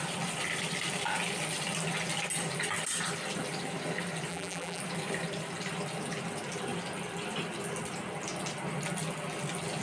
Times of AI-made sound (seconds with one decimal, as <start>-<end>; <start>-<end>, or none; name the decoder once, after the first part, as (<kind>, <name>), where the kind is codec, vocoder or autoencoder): 4.3-4.8 (vocoder, BigVGAN v2)